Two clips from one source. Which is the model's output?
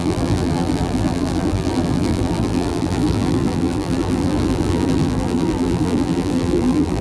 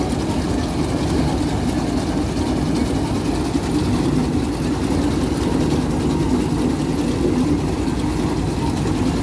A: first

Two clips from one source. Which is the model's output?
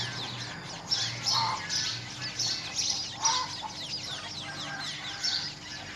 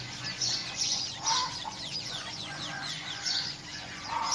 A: second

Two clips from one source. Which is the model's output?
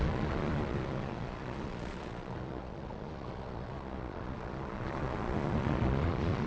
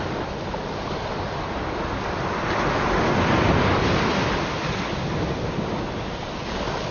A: first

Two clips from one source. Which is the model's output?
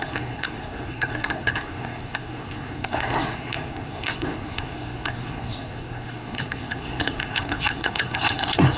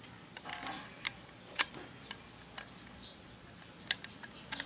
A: first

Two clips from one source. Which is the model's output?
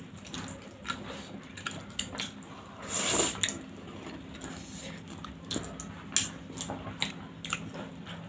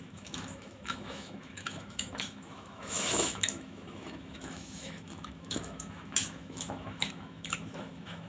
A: second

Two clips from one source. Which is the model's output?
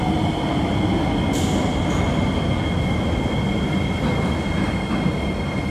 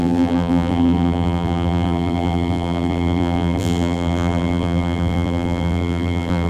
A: second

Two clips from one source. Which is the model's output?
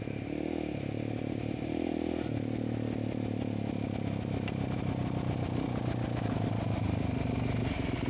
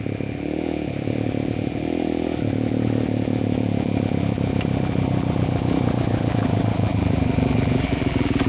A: second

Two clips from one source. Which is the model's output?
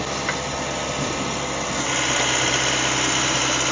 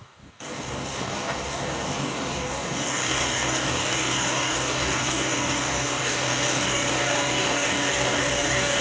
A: second